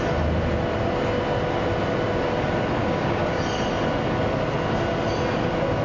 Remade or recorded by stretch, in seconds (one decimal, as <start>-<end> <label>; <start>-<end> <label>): 0.0-2.8 recorded; 2.8-3.4 remade; 3.4-5.8 recorded